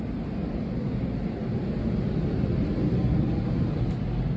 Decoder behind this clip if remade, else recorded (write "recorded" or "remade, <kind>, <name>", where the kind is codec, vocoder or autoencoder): recorded